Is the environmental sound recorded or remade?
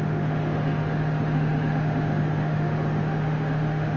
remade